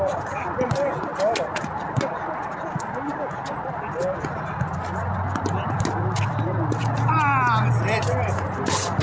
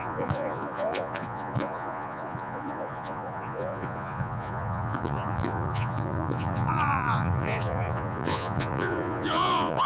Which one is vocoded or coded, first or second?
second